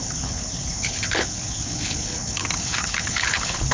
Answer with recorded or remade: remade